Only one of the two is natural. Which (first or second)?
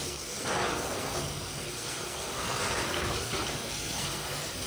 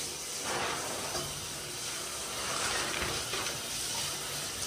second